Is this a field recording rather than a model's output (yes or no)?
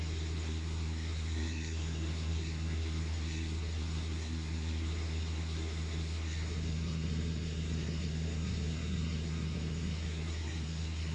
no